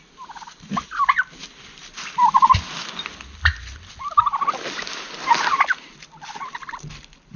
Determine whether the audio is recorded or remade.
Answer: recorded